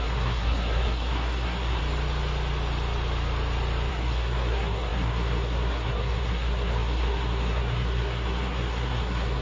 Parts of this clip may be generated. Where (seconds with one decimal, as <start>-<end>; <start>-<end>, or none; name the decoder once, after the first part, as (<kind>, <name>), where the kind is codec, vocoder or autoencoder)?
0.0-1.8 (codec, SNAC); 3.9-9.4